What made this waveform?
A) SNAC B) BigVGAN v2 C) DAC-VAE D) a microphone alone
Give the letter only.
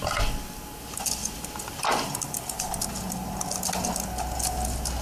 D